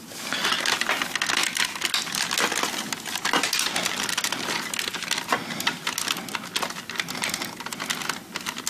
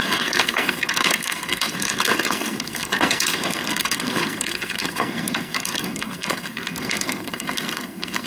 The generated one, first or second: second